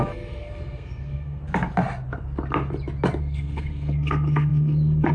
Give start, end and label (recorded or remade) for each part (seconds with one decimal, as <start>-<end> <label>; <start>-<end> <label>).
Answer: 0.0-1.4 remade; 1.4-3.2 recorded; 3.2-5.1 remade